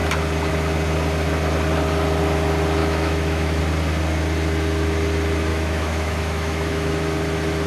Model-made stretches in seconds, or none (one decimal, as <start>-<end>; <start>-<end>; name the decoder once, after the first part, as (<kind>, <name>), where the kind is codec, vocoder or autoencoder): 2.8-3.6 (autoencoder, DAC-VAE); 5.5-6.9

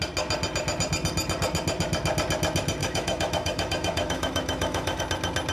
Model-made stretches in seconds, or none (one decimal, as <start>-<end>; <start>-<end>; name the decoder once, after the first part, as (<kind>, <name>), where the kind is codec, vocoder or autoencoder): 2.8-5.0 (autoencoder, DAC-VAE)